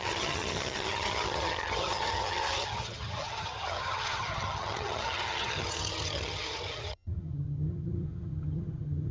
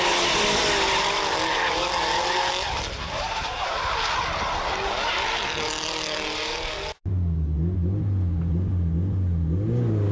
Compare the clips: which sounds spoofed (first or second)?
first